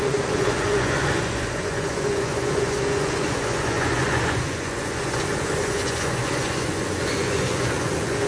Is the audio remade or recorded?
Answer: remade